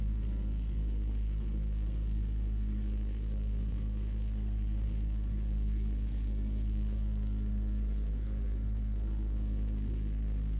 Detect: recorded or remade remade